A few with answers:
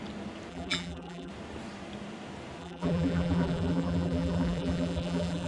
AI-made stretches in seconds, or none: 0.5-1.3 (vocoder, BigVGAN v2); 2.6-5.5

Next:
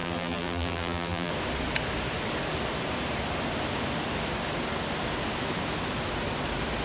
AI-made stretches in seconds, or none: 0.0-1.3 (vocoder, BigVGAN v2)

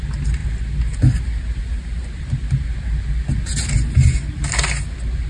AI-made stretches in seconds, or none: none

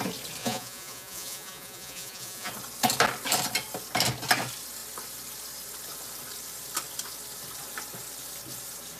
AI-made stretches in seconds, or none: 0.4-2.5 (vocoder, Vocos)

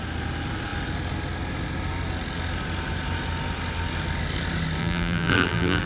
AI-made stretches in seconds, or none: 4.8-5.9 (vocoder, BigVGAN v2)

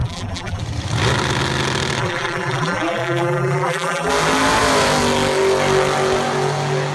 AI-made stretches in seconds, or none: 0.0-0.6 (vocoder, BigVGAN v2); 2.0-4.1